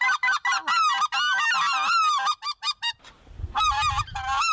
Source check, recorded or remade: recorded